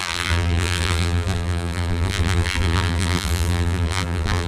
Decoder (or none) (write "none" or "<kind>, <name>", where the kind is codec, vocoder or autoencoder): vocoder, BigVGAN v2